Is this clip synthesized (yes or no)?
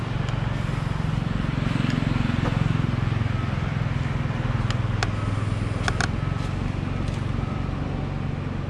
no